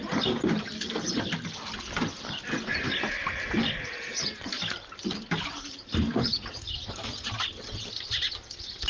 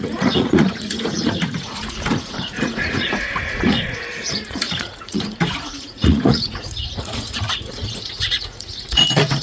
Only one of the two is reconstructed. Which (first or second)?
second